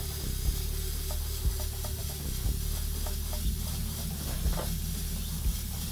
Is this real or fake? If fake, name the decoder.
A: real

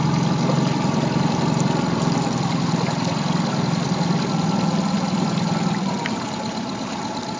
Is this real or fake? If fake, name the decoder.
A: real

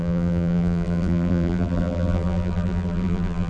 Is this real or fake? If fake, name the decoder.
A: fake, vocoder, BigVGAN v2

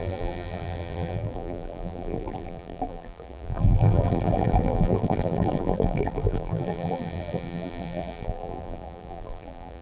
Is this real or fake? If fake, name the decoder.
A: fake, vocoder, BigVGAN v2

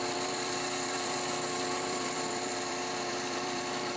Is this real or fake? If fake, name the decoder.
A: fake, vocoder, BigVGAN v2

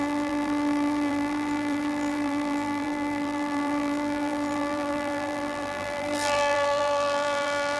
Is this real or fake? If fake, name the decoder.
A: fake, vocoder, BigVGAN v2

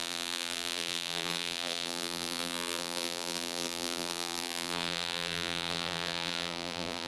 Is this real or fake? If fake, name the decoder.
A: fake, vocoder, BigVGAN v2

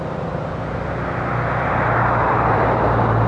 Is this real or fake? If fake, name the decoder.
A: fake, vocoder, BigVGAN v2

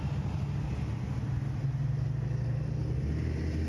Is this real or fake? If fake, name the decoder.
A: real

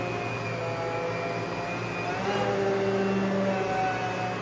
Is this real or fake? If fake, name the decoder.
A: real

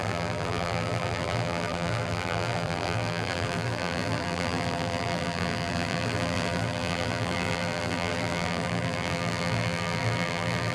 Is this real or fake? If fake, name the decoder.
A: fake, vocoder, BigVGAN v2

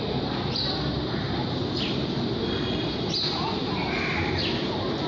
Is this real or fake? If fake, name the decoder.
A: fake, vocoder, BigVGAN v2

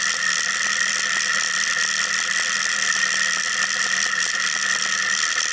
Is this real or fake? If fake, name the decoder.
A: fake, vocoder, BigVGAN v2